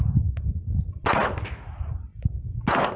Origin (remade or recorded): recorded